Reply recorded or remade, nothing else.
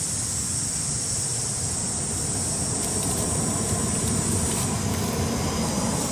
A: recorded